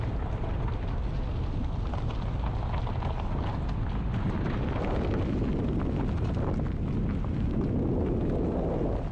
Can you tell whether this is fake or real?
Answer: real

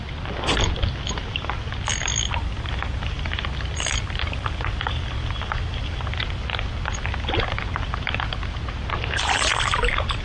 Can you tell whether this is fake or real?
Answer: real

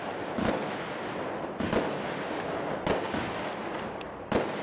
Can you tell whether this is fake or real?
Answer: real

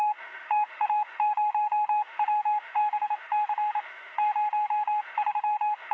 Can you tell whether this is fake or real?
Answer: fake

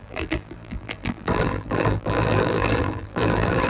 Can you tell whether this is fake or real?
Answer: fake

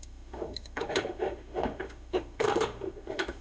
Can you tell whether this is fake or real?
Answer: fake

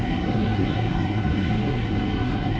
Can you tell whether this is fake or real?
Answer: fake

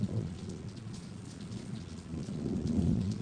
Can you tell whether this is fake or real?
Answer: fake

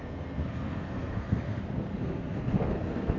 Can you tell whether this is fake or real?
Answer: fake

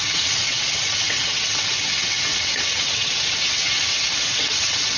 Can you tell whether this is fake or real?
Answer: fake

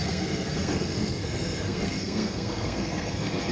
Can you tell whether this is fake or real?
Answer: fake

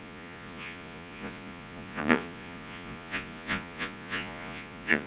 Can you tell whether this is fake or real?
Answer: fake